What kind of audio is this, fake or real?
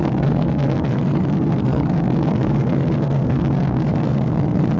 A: fake